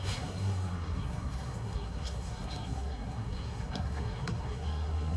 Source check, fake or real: fake